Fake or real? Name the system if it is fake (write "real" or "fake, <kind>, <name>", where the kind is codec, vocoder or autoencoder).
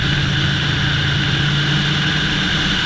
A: real